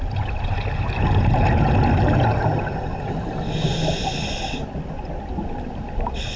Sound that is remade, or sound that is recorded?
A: recorded